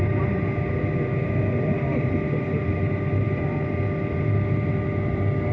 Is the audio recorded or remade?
recorded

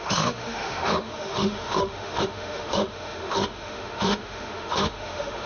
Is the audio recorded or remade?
remade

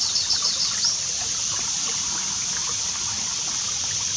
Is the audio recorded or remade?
recorded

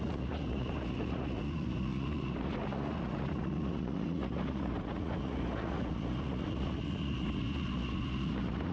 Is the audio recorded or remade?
remade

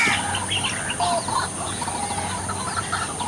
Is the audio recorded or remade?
recorded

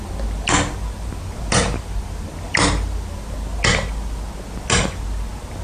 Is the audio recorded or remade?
recorded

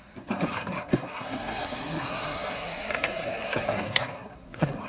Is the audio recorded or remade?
remade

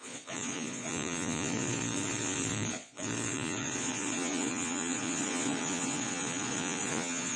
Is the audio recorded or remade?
remade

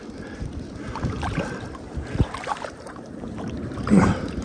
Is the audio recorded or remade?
remade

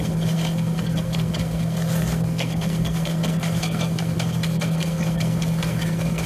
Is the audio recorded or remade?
remade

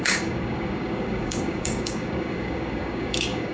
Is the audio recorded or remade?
remade